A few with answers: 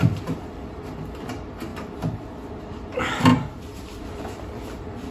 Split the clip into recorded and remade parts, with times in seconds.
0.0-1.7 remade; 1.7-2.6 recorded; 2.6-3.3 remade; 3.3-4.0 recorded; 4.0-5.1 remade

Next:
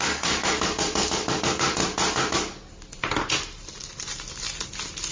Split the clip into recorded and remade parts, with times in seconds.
0.0-1.8 remade; 1.8-5.1 recorded

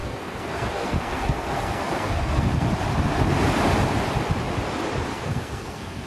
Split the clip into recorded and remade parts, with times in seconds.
0.0-2.7 remade; 2.7-5.1 recorded; 5.1-6.1 remade

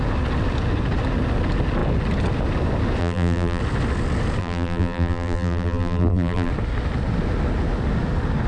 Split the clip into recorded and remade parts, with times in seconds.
0.0-3.0 recorded; 3.0-3.6 remade; 3.6-4.4 recorded; 4.4-6.5 remade; 6.5-8.5 recorded

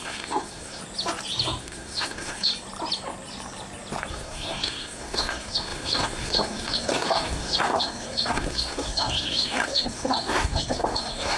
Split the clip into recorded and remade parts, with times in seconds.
0.0-0.8 remade; 0.8-1.6 recorded; 1.6-2.5 remade; 2.5-4.1 recorded; 4.1-11.4 remade

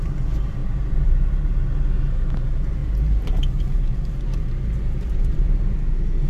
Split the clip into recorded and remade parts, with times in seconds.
0.0-2.8 recorded; 2.8-5.7 remade; 5.7-6.3 recorded

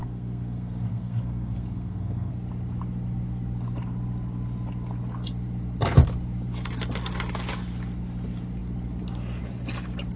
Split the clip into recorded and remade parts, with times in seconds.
0.0-2.3 remade; 2.3-10.2 recorded

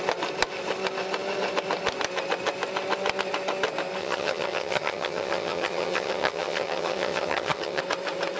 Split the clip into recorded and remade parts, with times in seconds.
0.0-4.0 recorded; 4.0-7.8 remade; 7.8-8.4 recorded